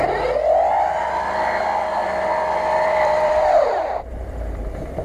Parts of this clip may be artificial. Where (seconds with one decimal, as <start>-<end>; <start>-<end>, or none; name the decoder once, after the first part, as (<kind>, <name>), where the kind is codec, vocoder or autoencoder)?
2.0-5.0 (vocoder, BigVGAN v2)

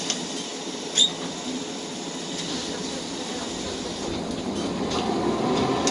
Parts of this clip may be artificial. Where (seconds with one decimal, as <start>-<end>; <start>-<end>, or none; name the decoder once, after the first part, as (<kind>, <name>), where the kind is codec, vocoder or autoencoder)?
none

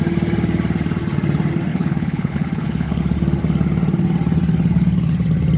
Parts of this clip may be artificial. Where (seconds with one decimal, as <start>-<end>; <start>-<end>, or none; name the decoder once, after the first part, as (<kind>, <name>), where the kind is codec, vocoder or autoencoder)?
1.7-3.0 (codec, HILCodec)

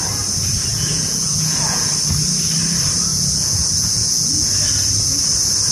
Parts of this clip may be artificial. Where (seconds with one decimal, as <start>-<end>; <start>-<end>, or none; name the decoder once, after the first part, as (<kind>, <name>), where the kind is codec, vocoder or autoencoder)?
0.7-1.9 (vocoder, Vocos); 3.1-4.5

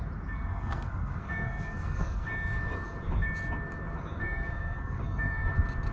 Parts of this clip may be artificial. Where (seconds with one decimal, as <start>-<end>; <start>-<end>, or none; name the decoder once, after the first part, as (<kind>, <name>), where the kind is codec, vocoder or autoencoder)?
0.5-2.3 (codec, SNAC); 4.2-5.5

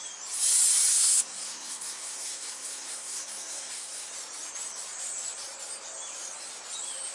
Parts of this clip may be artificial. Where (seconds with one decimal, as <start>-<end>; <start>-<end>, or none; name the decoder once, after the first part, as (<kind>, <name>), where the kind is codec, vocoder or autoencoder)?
0.9-4.1 (codec, SNAC)